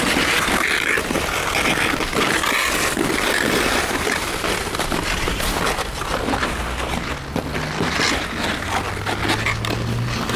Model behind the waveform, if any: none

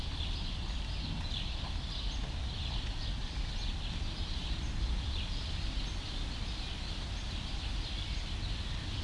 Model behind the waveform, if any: none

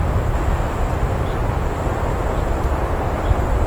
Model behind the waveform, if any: none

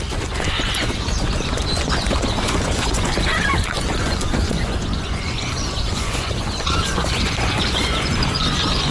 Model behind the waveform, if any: vocoder, Vocos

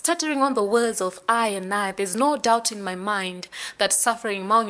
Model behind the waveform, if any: codec, DAC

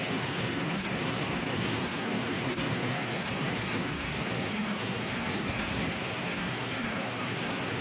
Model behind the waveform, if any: codec, SNAC